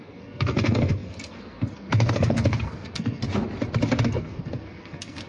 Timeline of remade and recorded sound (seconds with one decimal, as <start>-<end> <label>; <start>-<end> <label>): 0.0-3.2 remade; 3.2-4.0 recorded; 4.0-5.3 remade